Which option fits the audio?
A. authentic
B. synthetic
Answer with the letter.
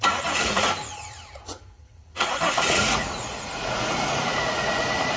B